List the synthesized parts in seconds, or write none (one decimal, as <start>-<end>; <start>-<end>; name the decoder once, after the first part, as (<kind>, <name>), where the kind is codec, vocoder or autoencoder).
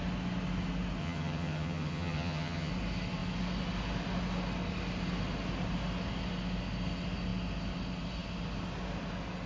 1.0-2.7 (vocoder, HiFi-GAN)